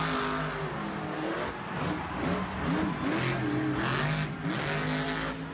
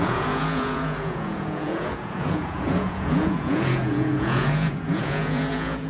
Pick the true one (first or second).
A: first